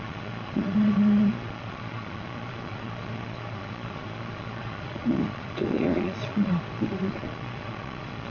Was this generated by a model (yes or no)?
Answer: yes